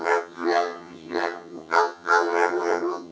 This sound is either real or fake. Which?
fake